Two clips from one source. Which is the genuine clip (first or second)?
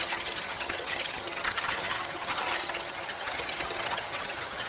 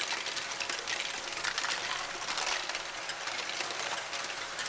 second